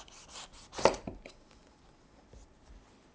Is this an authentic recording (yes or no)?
yes